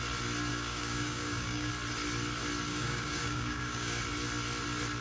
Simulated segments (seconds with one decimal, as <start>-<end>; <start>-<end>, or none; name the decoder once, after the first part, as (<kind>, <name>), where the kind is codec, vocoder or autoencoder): 0.5-1.7 (codec, DAC); 2.7-4.0